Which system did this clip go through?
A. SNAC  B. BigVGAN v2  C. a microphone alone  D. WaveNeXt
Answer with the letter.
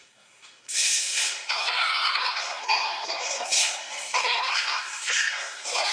A